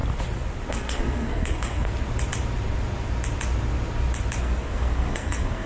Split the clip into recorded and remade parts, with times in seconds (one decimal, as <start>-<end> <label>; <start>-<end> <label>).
0.0-0.7 recorded; 0.7-1.9 remade; 1.9-4.4 recorded; 4.4-5.7 remade